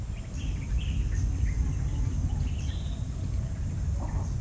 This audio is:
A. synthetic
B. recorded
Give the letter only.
B